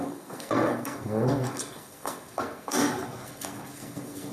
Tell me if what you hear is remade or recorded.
remade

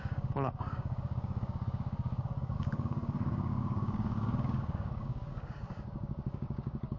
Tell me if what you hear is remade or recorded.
remade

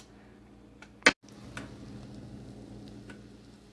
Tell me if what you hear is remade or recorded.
recorded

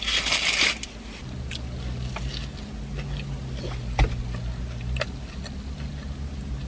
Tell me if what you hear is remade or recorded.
recorded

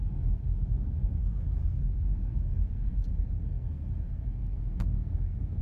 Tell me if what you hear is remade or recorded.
remade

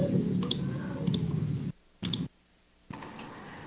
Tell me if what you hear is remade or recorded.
recorded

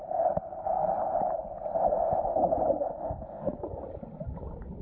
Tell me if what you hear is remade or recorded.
recorded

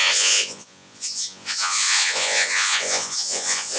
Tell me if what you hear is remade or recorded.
remade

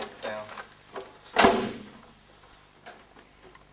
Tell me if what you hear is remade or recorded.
recorded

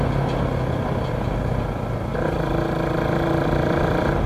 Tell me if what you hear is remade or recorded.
recorded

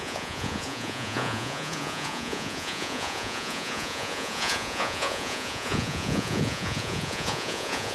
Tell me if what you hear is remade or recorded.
remade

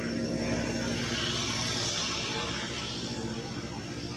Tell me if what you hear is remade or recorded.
recorded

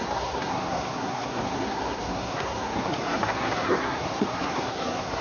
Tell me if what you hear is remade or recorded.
remade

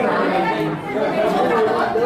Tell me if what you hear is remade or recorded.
recorded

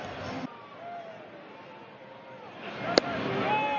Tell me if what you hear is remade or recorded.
recorded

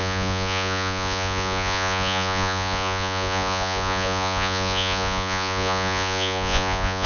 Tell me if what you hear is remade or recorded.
remade